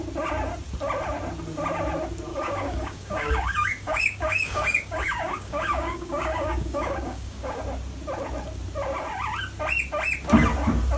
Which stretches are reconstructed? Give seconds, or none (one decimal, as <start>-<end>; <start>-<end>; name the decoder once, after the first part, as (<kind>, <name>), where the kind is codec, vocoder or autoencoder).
2.3-7.6 (codec, DAC)